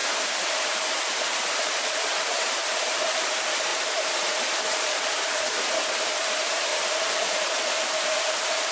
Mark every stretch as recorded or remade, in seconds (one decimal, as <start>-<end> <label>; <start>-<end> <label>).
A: 0.0-0.5 recorded; 0.5-8.7 remade